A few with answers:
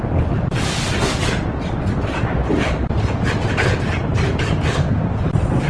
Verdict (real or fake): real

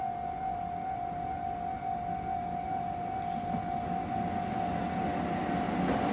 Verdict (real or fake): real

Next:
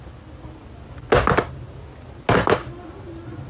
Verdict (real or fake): real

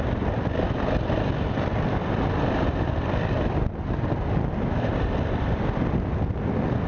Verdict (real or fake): fake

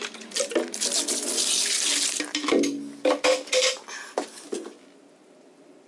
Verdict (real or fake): real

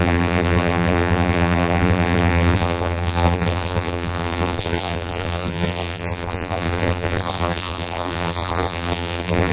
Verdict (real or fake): fake